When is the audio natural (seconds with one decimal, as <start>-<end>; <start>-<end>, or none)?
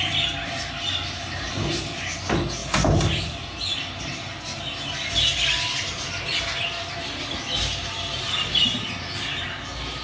0.0-10.0